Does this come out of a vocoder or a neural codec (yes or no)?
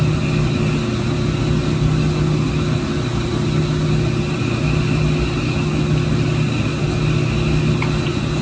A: no